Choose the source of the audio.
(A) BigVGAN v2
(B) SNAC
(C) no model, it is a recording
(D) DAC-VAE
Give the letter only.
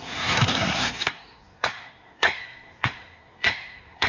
B